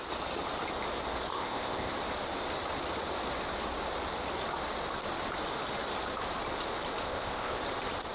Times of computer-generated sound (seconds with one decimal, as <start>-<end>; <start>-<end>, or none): 1.3-1.9; 7.0-7.6